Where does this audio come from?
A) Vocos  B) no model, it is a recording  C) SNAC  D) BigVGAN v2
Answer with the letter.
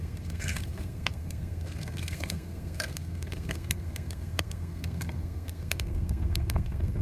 C